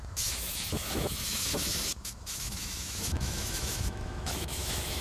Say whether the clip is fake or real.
fake